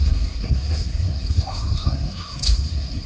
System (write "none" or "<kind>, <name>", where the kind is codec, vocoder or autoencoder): codec, SNAC